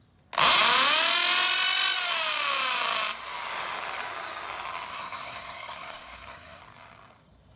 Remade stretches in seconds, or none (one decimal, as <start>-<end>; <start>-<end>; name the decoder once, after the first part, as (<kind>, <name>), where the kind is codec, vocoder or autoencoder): 4.9-6.6 (codec, SNAC)